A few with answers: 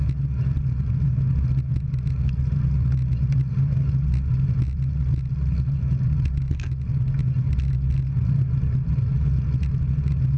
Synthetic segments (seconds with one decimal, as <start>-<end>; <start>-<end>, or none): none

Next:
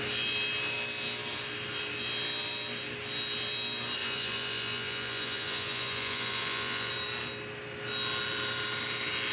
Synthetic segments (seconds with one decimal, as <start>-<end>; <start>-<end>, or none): 4.0-6.9

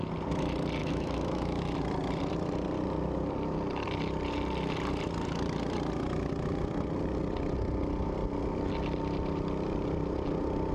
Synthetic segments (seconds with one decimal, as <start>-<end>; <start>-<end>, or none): 0.8-1.6